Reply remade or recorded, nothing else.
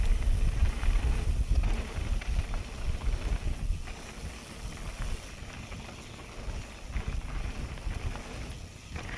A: recorded